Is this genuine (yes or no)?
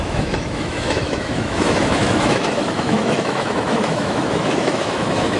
no